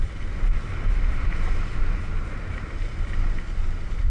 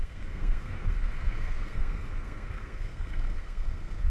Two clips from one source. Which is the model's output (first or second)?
second